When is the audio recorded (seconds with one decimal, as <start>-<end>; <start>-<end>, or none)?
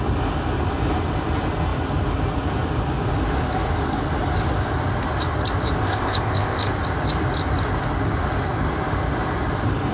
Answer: 0.0-5.8; 6.7-9.9